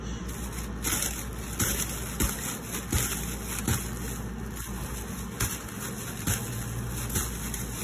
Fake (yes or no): no